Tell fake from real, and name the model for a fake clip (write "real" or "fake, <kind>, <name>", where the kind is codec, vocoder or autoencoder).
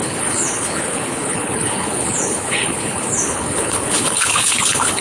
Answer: fake, codec, HILCodec